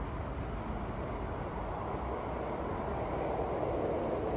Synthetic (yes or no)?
no